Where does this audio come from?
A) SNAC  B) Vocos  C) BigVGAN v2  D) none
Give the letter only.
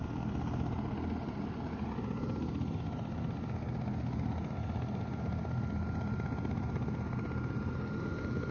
D